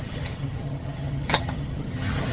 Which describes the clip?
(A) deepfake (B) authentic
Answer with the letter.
A